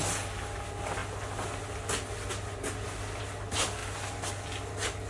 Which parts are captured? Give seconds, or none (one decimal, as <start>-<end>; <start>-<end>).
0.0-5.1